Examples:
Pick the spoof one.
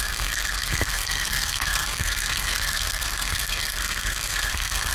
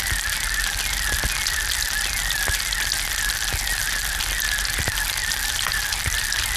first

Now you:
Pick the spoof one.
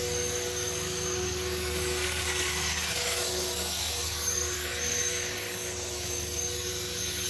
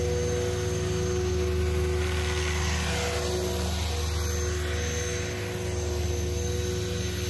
first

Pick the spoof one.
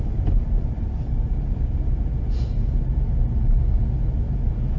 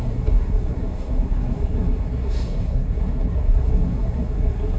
second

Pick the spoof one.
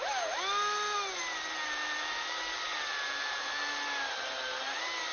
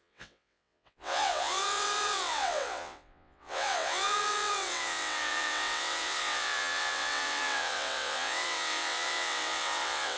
second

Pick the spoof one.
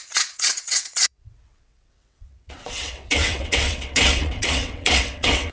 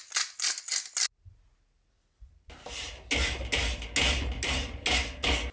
first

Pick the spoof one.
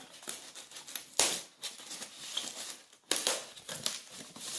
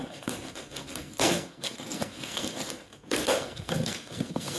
second